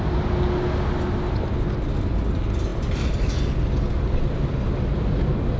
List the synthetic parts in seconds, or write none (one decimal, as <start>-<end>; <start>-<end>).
none